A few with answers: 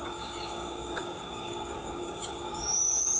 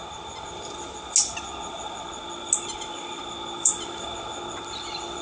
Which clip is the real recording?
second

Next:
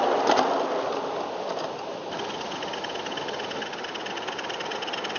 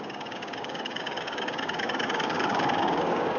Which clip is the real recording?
first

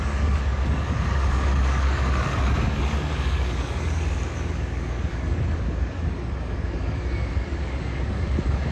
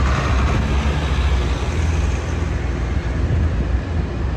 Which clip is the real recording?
second